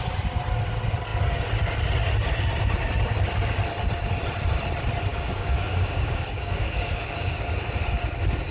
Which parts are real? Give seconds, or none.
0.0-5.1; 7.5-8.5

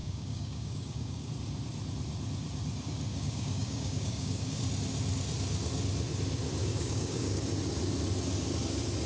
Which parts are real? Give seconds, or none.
1.3-3.1; 4.6-6.6; 7.4-9.1

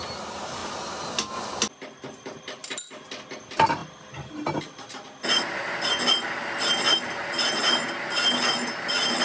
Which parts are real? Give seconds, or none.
0.0-9.2

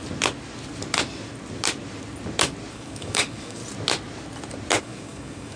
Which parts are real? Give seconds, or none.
0.0-2.7; 3.6-4.8